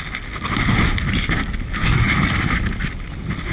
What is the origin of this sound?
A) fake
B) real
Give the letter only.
B